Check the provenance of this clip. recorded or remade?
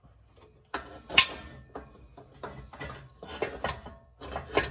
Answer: recorded